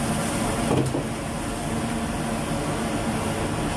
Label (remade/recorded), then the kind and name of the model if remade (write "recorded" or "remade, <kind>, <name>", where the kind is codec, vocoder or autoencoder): recorded